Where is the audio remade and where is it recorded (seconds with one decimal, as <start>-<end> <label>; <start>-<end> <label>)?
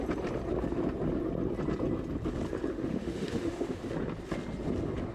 0.0-2.7 recorded; 2.7-3.8 remade; 3.8-5.1 recorded